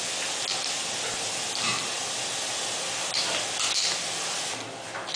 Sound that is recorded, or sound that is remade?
recorded